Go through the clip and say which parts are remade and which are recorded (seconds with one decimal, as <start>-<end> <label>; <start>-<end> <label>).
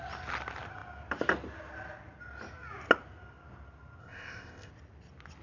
0.0-4.0 recorded; 4.0-4.7 remade; 4.7-5.4 recorded